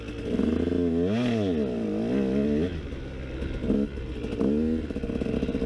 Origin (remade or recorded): recorded